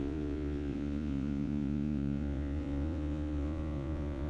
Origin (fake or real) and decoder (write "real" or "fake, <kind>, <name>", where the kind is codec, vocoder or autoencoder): fake, vocoder, Vocos